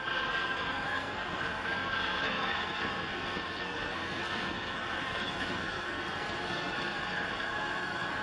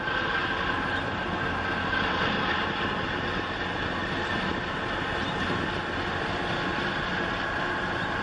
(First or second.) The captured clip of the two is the second